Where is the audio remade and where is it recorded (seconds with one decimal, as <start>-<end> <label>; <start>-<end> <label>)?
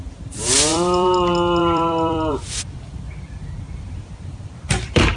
0.0-5.2 remade